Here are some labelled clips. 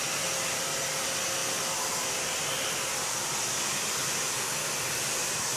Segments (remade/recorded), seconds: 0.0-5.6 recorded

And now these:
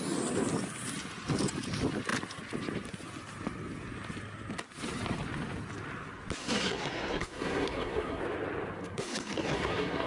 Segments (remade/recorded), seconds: 0.0-6.4 recorded; 6.4-8.2 remade; 8.2-8.8 recorded; 8.8-10.1 remade

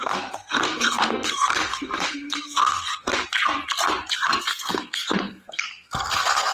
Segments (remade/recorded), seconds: 0.0-2.9 remade; 2.9-4.4 recorded; 4.4-6.5 remade